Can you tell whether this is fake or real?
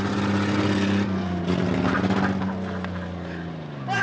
real